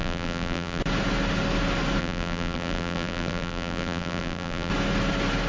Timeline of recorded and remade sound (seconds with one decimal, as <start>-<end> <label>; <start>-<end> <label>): 0.0-0.8 remade; 0.8-2.0 recorded; 2.0-4.7 remade; 4.7-5.5 recorded